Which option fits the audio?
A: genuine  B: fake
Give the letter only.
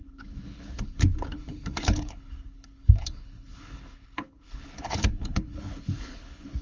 B